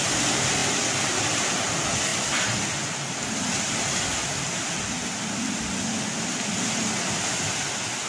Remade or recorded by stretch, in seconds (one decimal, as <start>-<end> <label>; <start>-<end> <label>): 0.0-8.1 recorded